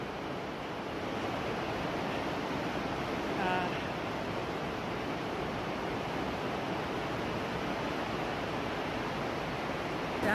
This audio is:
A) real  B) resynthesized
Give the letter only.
A